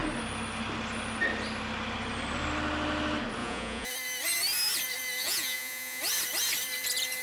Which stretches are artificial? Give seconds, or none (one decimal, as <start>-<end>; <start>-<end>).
3.4-3.9; 5.2-6.0